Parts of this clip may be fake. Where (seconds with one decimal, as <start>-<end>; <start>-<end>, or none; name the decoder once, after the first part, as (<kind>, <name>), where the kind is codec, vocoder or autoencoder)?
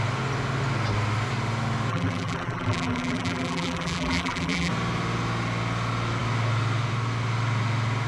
1.9-4.7 (vocoder, BigVGAN v2)